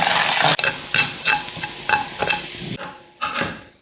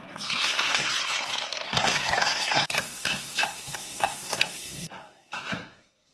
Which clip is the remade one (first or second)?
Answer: second